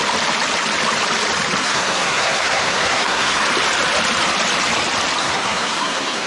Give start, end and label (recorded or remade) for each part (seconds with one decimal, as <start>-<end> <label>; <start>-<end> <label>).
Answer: 0.0-1.6 recorded; 1.6-3.4 remade; 3.4-5.2 recorded; 5.2-6.3 remade